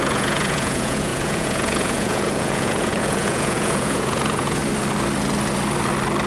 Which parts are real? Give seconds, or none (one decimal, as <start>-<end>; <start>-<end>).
4.6-6.3